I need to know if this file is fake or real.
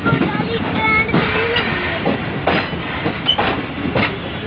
fake